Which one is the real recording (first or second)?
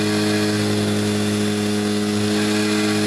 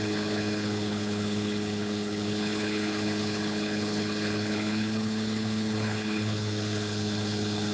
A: first